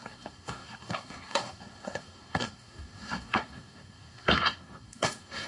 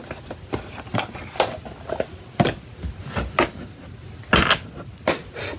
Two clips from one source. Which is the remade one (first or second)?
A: first